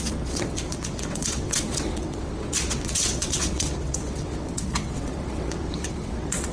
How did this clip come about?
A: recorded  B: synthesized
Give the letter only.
B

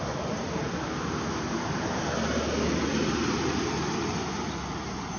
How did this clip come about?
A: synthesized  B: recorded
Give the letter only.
B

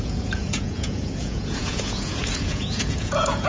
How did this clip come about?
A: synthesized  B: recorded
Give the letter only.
A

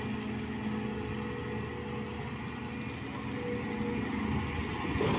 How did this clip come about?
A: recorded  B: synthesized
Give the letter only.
A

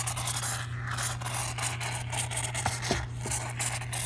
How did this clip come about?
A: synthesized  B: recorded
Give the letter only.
B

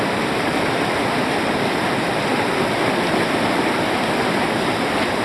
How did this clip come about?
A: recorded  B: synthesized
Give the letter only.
A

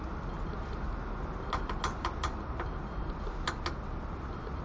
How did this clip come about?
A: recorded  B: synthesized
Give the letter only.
A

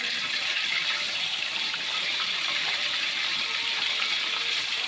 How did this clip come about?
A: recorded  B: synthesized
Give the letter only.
B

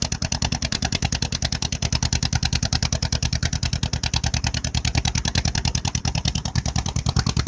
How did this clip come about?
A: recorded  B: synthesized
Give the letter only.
B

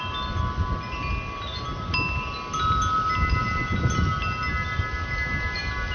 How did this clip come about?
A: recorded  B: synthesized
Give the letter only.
A